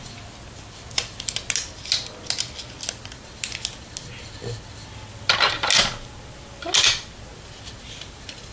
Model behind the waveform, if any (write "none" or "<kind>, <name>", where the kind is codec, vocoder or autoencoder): none